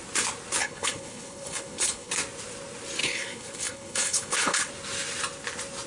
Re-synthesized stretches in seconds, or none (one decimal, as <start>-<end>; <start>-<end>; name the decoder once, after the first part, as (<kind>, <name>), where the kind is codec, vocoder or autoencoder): 0.6-2.1 (codec, HILCodec); 3.0-4.7